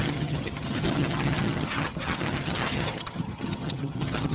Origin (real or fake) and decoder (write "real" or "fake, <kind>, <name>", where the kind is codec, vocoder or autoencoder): fake, vocoder, HiFi-GAN